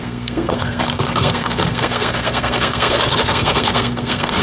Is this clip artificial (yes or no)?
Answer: yes